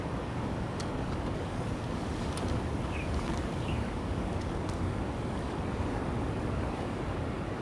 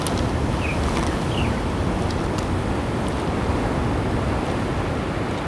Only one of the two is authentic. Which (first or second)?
second